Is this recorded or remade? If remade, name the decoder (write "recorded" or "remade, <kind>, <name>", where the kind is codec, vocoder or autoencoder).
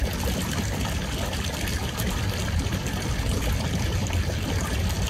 recorded